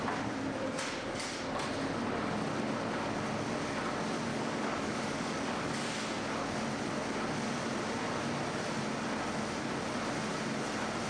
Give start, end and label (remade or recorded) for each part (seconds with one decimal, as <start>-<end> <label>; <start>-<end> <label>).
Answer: 0.0-4.3 recorded; 4.3-5.7 remade; 5.7-11.1 recorded